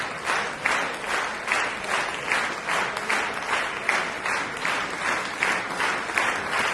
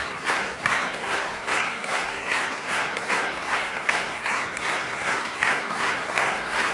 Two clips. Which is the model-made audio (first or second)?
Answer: second